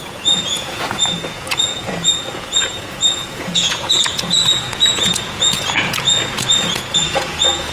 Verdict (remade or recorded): remade